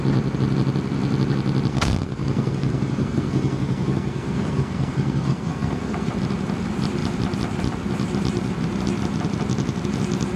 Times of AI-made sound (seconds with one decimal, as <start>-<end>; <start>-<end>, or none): 1.7-6.1